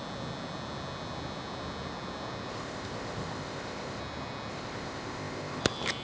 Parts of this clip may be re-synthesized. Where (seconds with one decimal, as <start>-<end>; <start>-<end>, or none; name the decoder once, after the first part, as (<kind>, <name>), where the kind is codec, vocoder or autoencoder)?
2.5-4.0 (codec, ZipCodec); 4.5-5.6